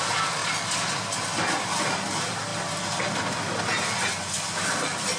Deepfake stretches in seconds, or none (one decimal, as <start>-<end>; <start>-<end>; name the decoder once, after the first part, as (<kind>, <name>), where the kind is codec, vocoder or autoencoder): none